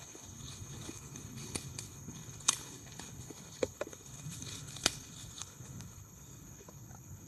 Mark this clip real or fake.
fake